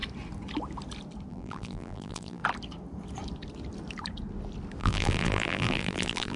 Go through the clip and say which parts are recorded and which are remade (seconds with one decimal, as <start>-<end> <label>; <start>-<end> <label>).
0.0-1.3 recorded; 1.3-2.4 remade; 2.4-4.8 recorded; 4.8-6.4 remade